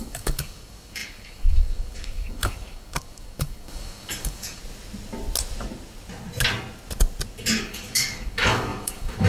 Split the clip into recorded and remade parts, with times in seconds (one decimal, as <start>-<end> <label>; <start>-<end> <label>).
0.0-4.6 remade; 4.6-7.6 recorded; 7.6-9.3 remade